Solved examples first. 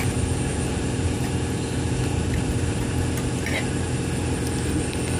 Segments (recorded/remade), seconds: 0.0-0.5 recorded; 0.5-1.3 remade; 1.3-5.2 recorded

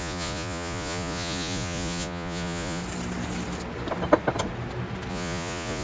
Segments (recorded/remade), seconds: 0.0-2.8 remade; 2.8-5.1 recorded; 5.1-5.8 remade